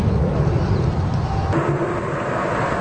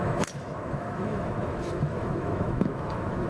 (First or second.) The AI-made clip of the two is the second